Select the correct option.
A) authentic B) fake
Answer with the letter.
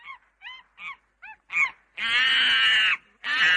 A